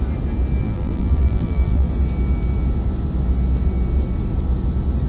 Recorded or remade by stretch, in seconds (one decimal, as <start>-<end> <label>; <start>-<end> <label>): 0.0-0.6 recorded; 0.6-1.9 remade; 1.9-5.1 recorded